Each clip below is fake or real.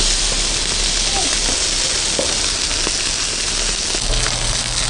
real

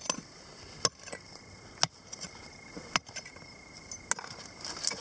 real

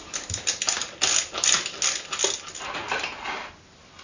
real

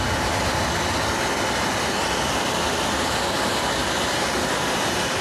real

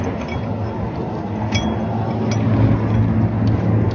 real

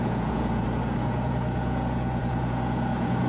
fake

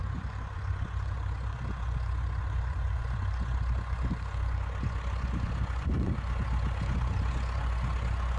fake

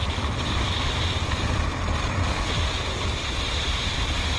real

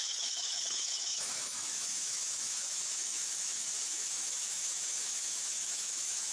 fake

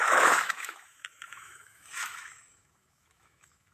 fake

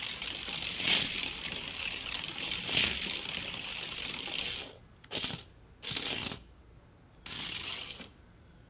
real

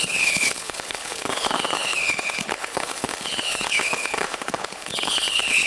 fake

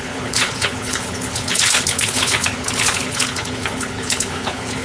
fake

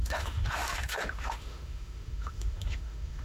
fake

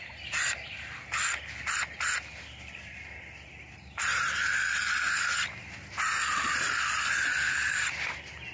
real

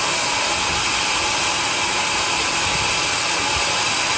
real